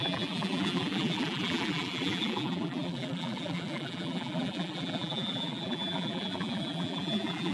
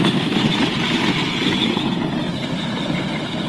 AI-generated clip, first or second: first